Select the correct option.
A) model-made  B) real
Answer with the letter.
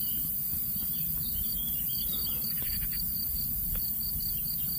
A